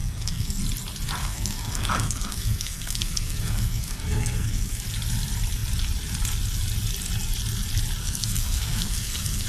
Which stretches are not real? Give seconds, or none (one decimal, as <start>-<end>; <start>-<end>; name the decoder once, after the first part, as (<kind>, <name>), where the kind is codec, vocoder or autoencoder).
0.0-0.6 (codec, SNAC); 1.2-4.8; 8.0-9.5